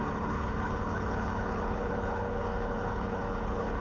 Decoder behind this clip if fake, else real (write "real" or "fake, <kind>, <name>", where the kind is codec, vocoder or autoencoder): fake, codec, HILCodec